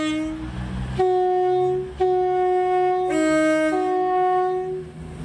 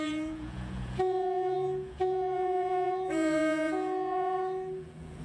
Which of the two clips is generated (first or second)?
second